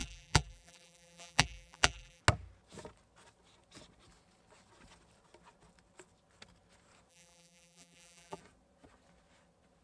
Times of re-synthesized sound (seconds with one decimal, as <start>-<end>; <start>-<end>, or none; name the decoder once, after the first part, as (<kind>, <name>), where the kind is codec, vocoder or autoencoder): 0.0-2.2 (vocoder, BigVGAN v2); 7.1-8.4